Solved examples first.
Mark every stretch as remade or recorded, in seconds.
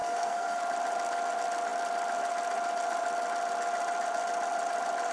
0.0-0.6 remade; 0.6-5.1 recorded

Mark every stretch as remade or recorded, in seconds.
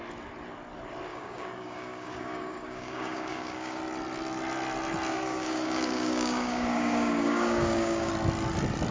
0.0-1.1 recorded; 1.1-3.8 remade; 3.8-5.1 recorded; 5.1-8.1 remade; 8.1-8.9 recorded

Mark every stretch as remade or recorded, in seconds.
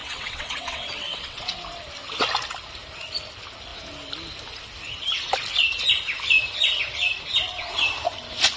0.0-1.6 remade; 1.6-8.6 recorded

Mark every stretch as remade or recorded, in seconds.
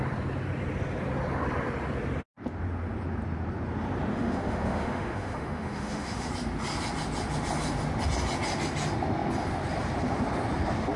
0.0-4.1 recorded; 4.1-6.3 remade; 6.3-11.0 recorded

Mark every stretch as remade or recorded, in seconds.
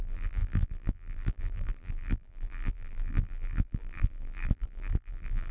0.0-5.5 remade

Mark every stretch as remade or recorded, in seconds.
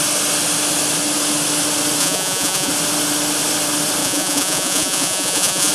0.0-2.0 recorded; 2.0-2.7 remade; 2.7-4.0 recorded; 4.0-5.7 remade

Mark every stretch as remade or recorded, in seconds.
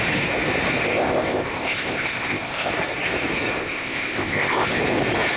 0.0-0.8 recorded; 0.8-2.7 remade; 2.7-3.6 recorded; 3.6-4.8 remade; 4.8-5.4 recorded